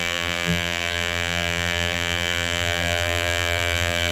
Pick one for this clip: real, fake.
fake